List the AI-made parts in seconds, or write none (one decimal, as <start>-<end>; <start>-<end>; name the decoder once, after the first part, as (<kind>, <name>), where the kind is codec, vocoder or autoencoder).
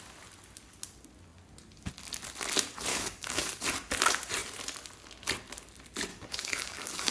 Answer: 2.9-3.5 (codec, DAC); 6.1-7.1